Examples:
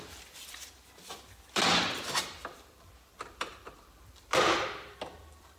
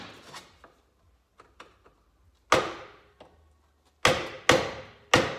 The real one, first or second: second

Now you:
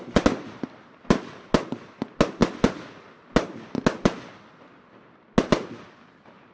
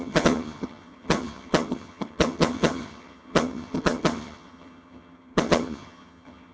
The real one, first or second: first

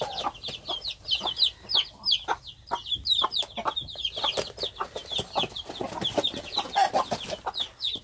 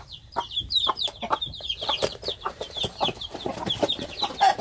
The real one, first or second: first